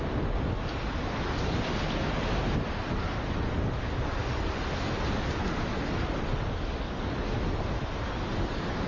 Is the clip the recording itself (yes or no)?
yes